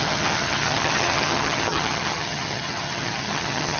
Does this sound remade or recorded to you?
remade